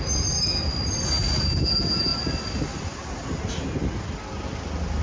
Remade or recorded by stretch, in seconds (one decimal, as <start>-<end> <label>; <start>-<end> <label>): 0.0-5.0 recorded